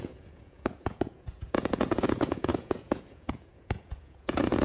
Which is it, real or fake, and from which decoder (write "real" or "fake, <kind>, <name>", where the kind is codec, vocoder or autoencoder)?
fake, vocoder, Vocos